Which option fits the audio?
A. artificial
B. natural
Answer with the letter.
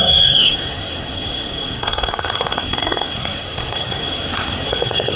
A